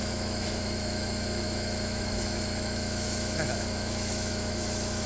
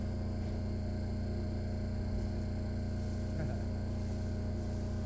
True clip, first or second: second